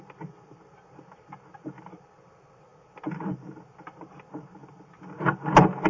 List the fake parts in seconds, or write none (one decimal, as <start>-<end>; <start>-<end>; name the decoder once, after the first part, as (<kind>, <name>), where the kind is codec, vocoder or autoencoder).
2.7-3.5 (vocoder, BigVGAN v2)